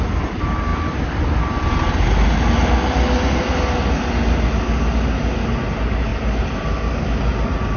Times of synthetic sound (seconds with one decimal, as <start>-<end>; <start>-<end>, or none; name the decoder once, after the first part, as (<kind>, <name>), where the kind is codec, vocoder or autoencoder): none